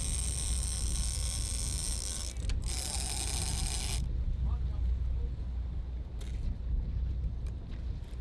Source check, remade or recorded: recorded